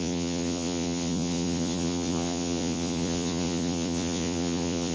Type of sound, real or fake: fake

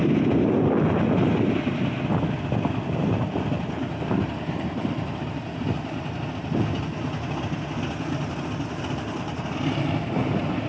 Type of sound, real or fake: real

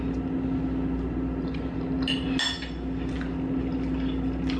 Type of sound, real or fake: real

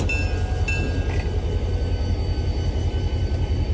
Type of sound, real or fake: real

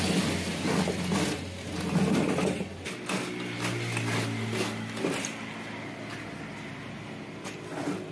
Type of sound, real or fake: real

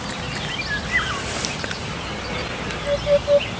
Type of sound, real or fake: real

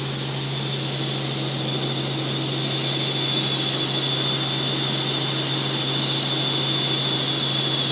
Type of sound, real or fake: real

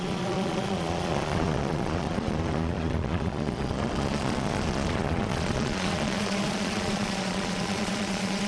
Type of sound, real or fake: fake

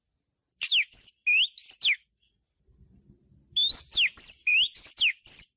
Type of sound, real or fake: real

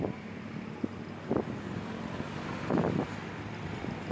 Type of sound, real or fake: real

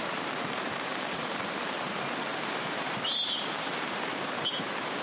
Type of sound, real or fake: fake